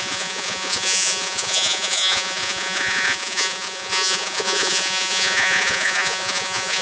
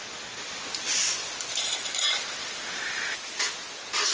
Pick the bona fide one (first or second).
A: second